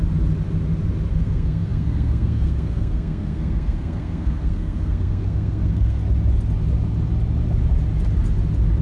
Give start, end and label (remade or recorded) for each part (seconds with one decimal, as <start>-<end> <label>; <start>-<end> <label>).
0.0-1.1 recorded; 1.1-6.0 remade; 6.0-8.8 recorded